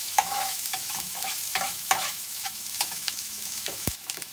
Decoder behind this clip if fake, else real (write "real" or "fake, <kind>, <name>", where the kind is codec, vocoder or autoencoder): fake, autoencoder, DAC-VAE